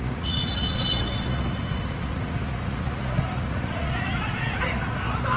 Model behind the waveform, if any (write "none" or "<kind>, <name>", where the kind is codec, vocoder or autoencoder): vocoder, Vocos